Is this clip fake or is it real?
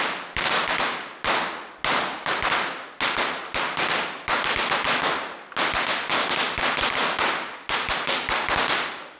real